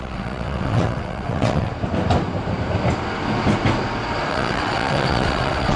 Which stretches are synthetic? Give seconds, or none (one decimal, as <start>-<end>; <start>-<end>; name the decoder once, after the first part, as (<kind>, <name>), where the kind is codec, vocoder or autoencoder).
0.0-1.7 (vocoder, WaveNeXt); 4.3-5.8